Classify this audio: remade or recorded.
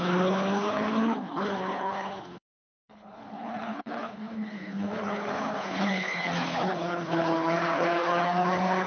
remade